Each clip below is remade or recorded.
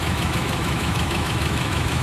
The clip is remade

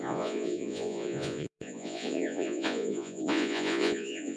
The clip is remade